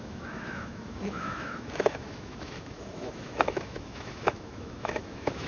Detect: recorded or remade remade